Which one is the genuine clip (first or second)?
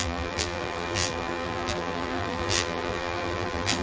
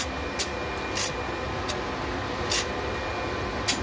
second